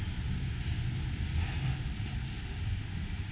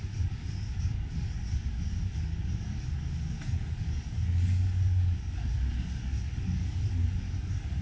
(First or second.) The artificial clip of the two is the second